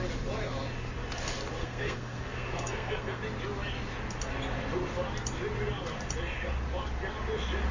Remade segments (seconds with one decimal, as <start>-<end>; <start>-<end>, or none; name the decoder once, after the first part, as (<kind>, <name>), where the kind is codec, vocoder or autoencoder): 1.6-3.2 (codec, SNAC)